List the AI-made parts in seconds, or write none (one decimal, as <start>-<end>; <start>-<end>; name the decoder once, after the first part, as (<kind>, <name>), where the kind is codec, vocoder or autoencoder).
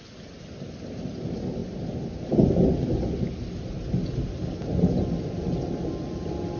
none